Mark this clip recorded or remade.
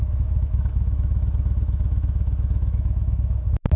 remade